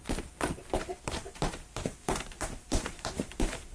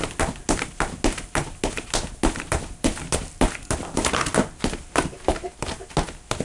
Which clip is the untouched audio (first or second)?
second